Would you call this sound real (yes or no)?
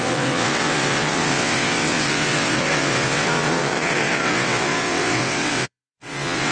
no